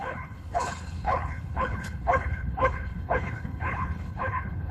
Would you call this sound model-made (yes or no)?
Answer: yes